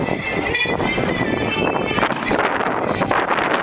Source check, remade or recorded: recorded